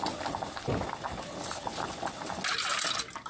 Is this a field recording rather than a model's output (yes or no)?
yes